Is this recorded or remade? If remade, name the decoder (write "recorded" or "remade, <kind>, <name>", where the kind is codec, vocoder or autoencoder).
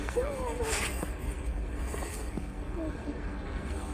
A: remade, codec, SNAC